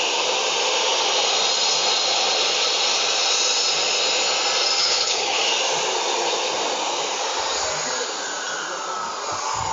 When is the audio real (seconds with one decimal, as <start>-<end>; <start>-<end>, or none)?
0.0-4.8; 5.4-9.7

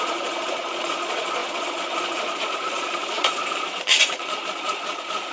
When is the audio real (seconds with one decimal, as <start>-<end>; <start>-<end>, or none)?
none